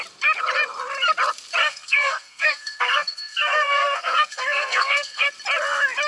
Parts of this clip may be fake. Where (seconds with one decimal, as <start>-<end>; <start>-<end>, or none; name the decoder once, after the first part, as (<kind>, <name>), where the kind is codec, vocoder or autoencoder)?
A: 1.6-5.3 (codec, SNAC)